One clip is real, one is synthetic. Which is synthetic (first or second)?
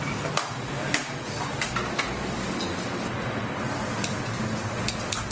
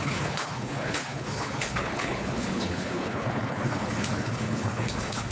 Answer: second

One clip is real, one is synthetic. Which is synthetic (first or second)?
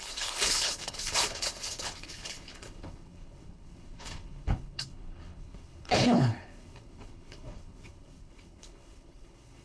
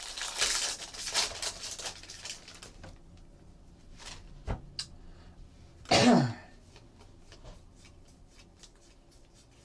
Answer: first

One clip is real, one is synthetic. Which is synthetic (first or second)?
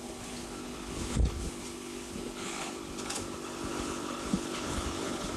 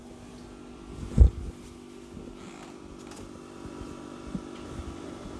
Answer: first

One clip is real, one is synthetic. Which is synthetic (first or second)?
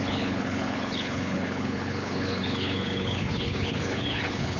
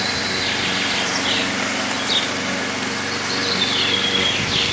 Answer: first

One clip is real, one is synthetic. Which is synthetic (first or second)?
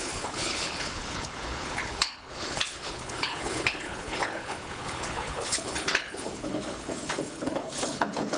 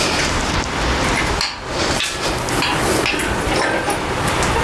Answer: first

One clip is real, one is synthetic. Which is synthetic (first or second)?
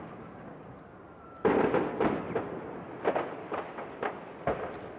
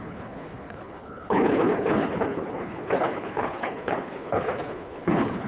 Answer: second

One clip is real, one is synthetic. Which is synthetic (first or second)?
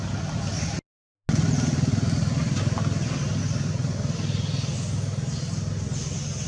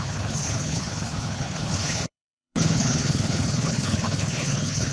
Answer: second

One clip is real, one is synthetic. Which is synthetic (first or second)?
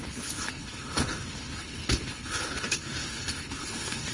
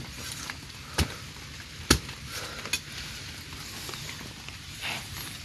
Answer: first